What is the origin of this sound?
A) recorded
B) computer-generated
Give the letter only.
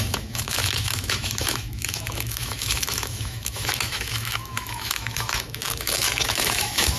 B